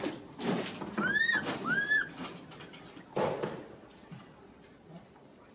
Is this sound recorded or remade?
remade